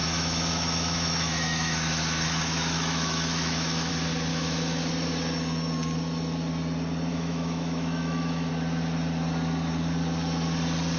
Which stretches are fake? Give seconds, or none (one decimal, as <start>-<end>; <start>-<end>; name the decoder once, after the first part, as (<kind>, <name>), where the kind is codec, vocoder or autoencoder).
0.0-3.9 (autoencoder, DAC-VAE); 4.3-4.9; 7.1-8.5